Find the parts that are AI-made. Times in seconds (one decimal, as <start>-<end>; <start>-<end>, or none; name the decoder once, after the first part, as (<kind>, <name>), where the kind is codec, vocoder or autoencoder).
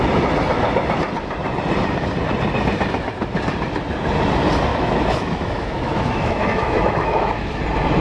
4.7-7.6 (autoencoder, DAC-VAE)